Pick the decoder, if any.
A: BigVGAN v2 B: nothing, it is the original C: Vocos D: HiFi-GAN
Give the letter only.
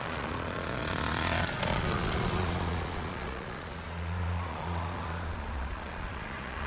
C